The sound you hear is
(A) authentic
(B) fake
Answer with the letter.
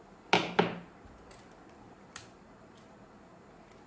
A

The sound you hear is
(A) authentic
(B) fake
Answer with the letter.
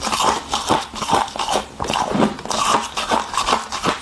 A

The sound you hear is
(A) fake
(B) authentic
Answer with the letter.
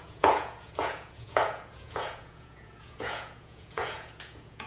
A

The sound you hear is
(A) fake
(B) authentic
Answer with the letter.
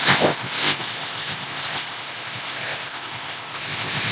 A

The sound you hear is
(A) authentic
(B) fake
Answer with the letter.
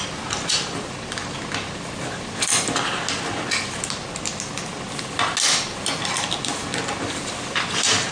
A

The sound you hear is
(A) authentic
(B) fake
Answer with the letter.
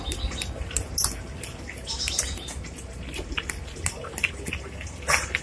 A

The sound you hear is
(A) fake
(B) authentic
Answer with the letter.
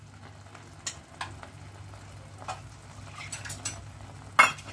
B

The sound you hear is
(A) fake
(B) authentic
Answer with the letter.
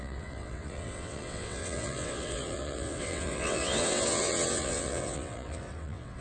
A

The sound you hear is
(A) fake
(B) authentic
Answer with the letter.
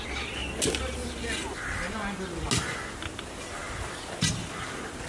B